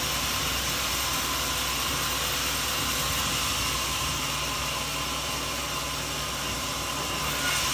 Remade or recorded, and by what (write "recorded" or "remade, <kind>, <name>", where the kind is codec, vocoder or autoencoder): recorded